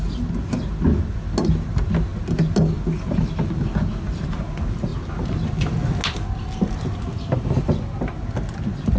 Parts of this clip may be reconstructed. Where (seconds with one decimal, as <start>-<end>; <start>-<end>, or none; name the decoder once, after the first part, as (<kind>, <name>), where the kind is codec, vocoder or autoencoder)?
none